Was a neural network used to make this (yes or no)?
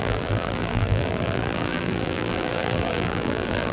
yes